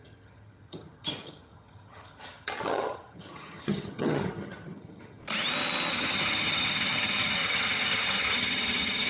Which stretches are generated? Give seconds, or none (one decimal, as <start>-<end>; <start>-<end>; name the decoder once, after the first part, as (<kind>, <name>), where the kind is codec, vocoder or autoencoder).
0.0-5.2 (vocoder, HiFi-GAN); 5.9-9.1